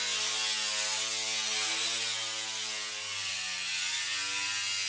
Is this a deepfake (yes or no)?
no